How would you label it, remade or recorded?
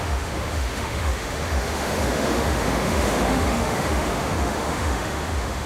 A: remade